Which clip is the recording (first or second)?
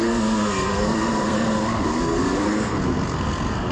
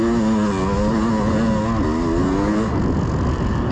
second